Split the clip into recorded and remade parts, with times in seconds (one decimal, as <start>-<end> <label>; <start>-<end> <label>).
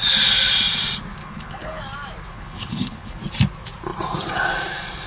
0.0-1.2 recorded; 1.2-1.8 remade; 1.8-2.3 recorded; 2.3-3.2 remade; 3.2-5.1 recorded